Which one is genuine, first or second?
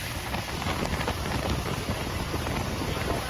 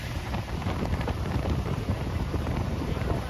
first